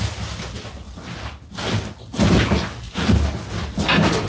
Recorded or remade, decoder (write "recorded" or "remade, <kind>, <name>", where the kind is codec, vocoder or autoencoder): recorded